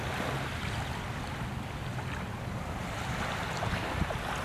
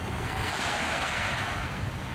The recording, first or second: first